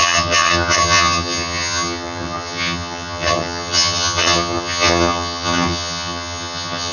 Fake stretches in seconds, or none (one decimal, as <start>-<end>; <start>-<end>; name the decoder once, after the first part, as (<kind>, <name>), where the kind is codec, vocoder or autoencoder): 0.0-6.9 (vocoder, HiFi-GAN)